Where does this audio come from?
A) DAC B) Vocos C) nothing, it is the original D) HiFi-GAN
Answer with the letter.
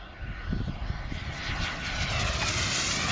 C